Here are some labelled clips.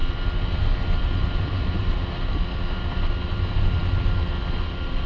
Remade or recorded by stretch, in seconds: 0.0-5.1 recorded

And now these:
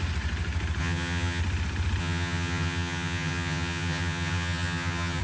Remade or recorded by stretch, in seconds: 0.0-0.8 recorded; 0.8-1.4 remade; 1.4-2.0 recorded; 2.0-5.2 remade

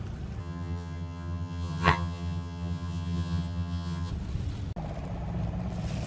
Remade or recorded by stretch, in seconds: 0.0-0.4 recorded; 0.4-4.1 remade; 4.1-6.1 recorded

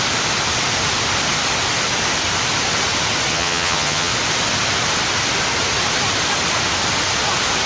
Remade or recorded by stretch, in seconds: 0.0-3.3 recorded; 3.3-4.1 remade; 4.1-7.7 recorded